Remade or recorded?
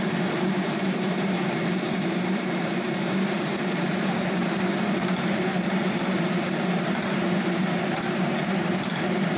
remade